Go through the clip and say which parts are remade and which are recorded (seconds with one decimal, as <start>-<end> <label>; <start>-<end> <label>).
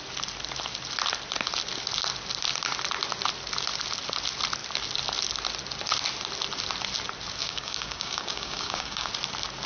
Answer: 0.0-7.4 recorded; 7.4-9.1 remade; 9.1-9.7 recorded